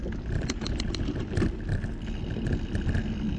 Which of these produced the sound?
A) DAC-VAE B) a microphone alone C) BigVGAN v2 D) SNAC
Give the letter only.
B